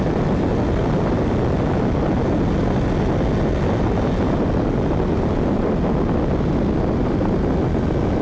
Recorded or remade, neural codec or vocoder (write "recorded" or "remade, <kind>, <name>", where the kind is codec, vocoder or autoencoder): recorded